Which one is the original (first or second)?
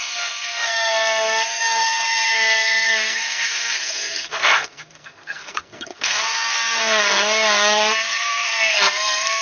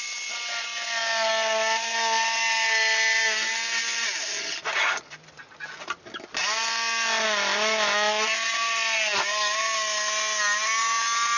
second